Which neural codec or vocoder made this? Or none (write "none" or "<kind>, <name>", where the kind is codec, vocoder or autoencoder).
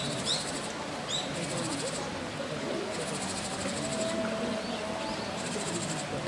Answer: none